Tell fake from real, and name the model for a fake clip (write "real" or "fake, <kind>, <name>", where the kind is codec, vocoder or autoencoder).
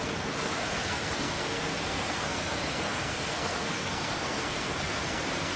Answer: fake, codec, SNAC